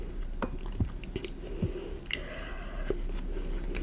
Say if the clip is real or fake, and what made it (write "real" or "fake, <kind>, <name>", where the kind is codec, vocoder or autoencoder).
real